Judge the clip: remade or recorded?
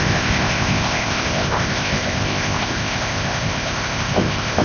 remade